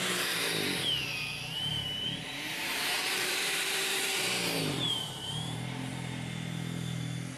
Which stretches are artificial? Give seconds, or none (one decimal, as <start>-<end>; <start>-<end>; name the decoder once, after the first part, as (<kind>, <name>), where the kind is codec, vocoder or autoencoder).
1.7-5.9 (vocoder, BigVGAN v2)